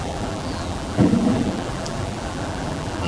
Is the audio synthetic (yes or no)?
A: yes